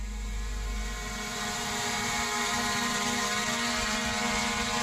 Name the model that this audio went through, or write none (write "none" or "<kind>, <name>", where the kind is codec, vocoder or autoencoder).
none